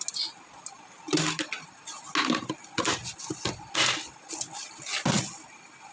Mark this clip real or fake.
real